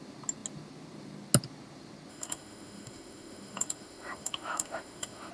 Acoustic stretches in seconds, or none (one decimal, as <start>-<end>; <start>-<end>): 0.0-2.1